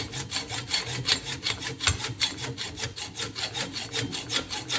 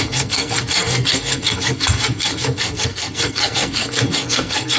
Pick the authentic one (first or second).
first